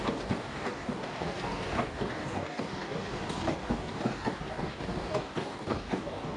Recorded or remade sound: remade